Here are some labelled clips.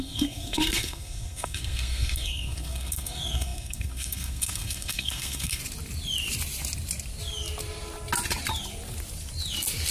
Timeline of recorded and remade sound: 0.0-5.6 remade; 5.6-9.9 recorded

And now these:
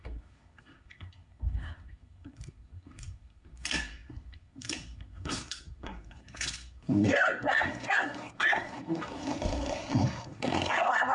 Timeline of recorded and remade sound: 0.0-11.1 remade

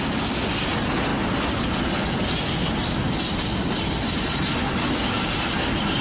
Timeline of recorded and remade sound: 0.0-4.6 recorded; 4.6-5.2 remade; 5.2-6.0 recorded

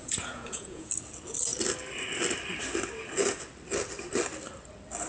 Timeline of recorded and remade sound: 0.0-0.9 remade; 0.9-5.1 recorded